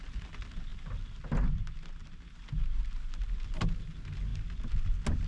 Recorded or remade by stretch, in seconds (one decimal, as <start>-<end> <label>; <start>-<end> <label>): 0.0-5.3 recorded